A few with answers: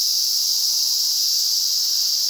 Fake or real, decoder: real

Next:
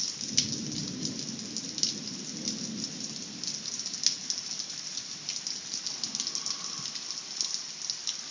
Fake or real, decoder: real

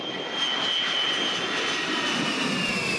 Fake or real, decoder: real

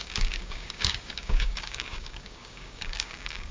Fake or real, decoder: fake, codec, DAC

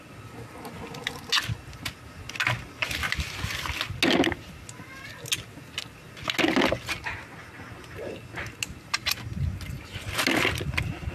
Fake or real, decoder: real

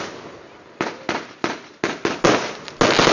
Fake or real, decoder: real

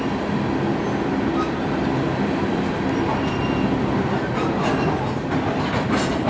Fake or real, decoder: real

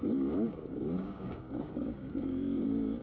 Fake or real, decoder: fake, codec, DAC